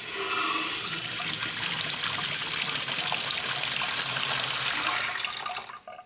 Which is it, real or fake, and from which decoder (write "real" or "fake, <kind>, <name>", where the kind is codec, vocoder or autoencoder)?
real